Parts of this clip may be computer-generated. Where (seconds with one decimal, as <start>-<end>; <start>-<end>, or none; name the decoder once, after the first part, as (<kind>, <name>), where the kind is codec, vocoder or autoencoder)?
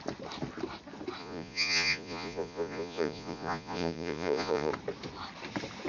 1.2-4.7 (vocoder, Vocos)